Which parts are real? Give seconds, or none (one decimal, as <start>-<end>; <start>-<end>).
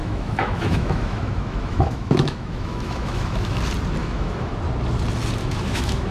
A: 3.6-4.0; 4.5-5.4